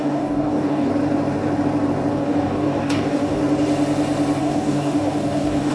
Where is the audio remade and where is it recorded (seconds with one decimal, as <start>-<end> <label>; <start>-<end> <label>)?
0.0-0.9 remade; 0.9-2.1 recorded; 2.1-3.4 remade; 3.4-4.4 recorded; 4.4-5.7 remade